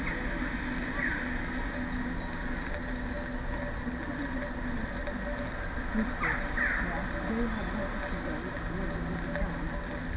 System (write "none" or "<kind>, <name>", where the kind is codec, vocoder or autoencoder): none